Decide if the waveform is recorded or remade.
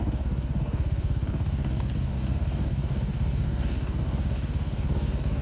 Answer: remade